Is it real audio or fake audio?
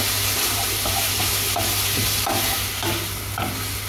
real